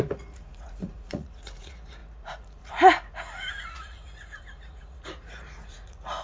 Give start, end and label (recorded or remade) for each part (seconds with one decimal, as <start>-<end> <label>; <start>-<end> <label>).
0.0-6.2 remade